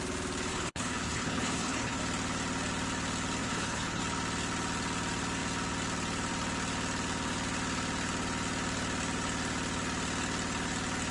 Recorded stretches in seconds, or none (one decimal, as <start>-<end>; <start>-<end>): 0.0-0.5; 2.0-3.4; 4.0-11.1